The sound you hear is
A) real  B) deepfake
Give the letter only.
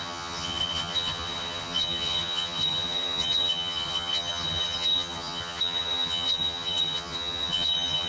B